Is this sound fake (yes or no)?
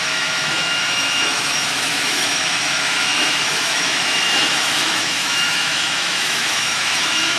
yes